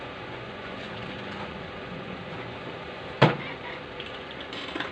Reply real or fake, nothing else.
fake